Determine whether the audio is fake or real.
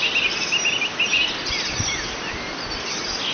real